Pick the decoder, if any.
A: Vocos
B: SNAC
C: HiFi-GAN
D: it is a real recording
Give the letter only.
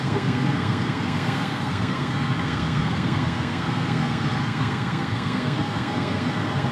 B